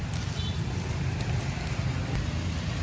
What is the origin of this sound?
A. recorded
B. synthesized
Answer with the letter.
A